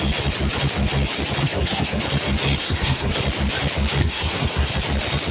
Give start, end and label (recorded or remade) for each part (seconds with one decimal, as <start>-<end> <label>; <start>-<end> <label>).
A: 0.0-1.4 recorded; 1.4-2.0 remade; 2.0-2.6 recorded; 2.6-3.1 remade; 3.1-4.0 recorded; 4.0-4.7 remade; 4.7-5.3 recorded